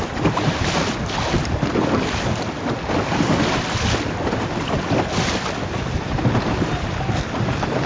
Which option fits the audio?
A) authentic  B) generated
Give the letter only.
A